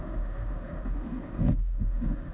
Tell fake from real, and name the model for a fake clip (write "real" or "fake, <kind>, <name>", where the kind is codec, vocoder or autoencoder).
fake, autoencoder, DAC-VAE